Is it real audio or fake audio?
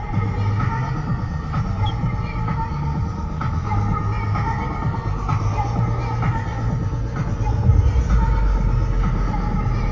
real